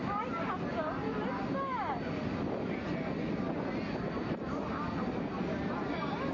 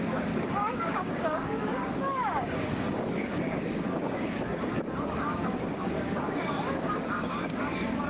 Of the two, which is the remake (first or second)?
second